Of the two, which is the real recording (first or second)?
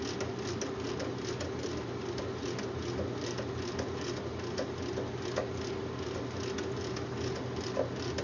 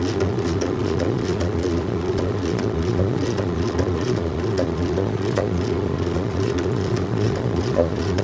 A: first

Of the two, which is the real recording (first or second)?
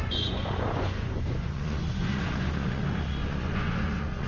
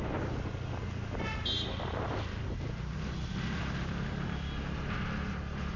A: second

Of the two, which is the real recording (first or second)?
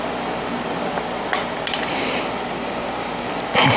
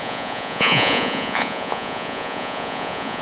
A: first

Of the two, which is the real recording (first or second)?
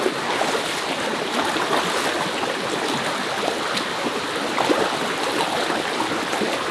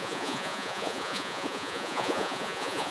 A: first